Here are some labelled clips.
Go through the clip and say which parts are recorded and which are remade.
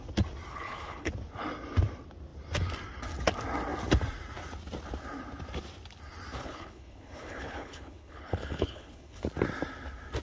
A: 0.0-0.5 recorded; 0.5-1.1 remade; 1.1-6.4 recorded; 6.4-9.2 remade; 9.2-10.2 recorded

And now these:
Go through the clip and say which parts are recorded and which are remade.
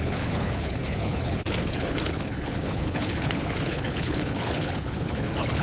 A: 0.0-5.6 remade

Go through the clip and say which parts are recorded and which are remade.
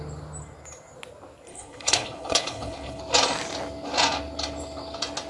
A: 0.0-1.5 recorded; 1.5-3.0 remade; 3.0-5.3 recorded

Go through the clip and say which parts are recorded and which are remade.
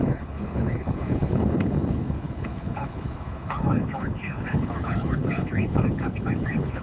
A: 0.0-6.8 remade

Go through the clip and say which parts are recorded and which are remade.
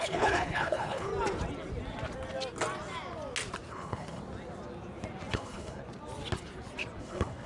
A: 0.0-1.1 remade; 1.1-3.7 recorded; 3.7-4.2 remade; 4.2-5.3 recorded; 5.3-5.8 remade; 5.8-7.0 recorded; 7.0-7.5 remade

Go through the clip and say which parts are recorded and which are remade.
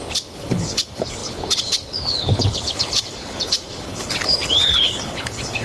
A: 0.0-5.6 remade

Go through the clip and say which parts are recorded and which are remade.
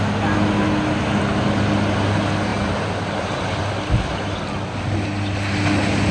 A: 0.0-6.1 recorded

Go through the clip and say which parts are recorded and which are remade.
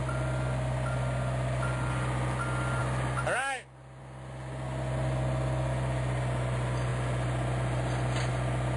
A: 0.0-8.8 recorded